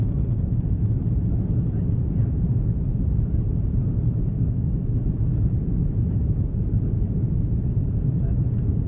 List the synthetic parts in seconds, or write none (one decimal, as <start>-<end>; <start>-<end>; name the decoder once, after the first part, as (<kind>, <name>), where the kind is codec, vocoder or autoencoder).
0.0-8.9 (vocoder, BigVGAN v2)